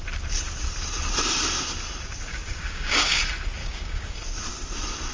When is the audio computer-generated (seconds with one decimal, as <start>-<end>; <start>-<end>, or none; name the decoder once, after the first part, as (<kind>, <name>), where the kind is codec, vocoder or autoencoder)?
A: 2.3-3.2 (codec, DAC); 3.6-4.1